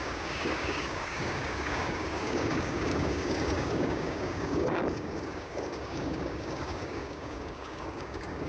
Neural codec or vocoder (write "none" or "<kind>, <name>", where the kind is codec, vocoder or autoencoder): codec, DAC